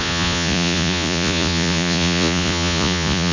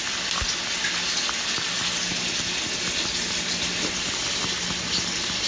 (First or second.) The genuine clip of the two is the second